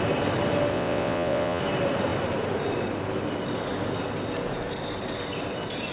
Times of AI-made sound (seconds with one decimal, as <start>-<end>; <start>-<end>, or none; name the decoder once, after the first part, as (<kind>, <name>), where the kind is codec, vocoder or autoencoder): 0.7-1.6 (vocoder, WaveNeXt)